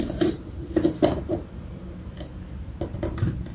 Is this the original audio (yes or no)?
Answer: yes